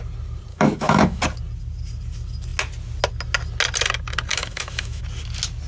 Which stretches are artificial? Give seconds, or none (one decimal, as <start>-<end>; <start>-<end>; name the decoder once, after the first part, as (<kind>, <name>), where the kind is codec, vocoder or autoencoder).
0.5-1.2 (autoencoder, DAC-VAE); 4.3-5.0